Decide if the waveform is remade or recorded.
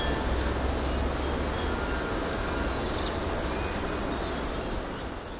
recorded